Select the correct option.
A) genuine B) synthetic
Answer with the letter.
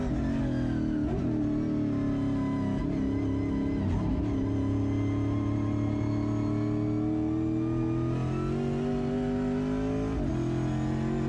A